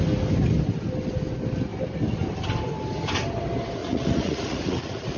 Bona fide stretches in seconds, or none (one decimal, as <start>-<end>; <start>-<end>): 0.0-3.8